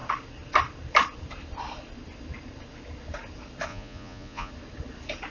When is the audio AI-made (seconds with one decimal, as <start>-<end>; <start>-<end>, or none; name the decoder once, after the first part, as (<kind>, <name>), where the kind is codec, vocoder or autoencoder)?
3.7-4.5 (vocoder, Vocos)